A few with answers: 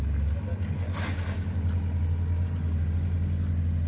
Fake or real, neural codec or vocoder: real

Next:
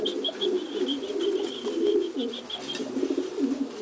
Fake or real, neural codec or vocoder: real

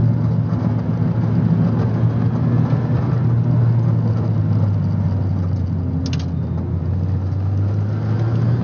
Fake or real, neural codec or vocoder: real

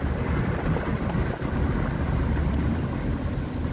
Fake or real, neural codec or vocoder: real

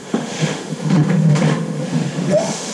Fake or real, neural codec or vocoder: fake, autoencoder, DAC-VAE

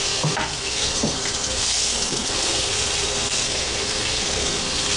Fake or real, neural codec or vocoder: fake, codec, SNAC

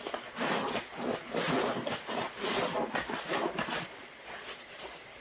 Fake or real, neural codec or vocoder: real